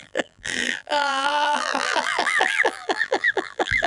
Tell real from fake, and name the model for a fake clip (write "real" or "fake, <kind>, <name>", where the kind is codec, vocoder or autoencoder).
fake, vocoder, BigVGAN v2